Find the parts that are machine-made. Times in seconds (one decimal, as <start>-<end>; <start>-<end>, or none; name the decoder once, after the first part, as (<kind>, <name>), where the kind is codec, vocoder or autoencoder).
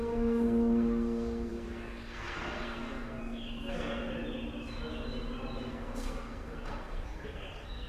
0.0-4.0 (codec, SNAC); 5.7-7.9